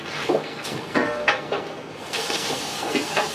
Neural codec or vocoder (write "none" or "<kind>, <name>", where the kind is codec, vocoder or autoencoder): codec, SNAC